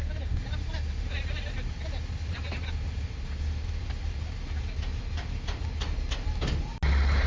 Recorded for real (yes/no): yes